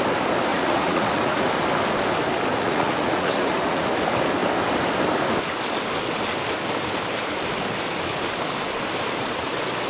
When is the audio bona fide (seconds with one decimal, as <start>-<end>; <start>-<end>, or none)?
0.0-0.5; 1.5-2.5; 3.9-9.9